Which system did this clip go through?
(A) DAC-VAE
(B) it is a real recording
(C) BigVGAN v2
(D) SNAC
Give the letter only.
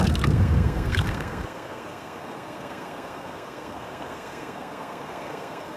D